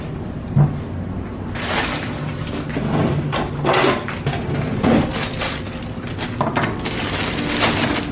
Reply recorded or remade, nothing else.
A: recorded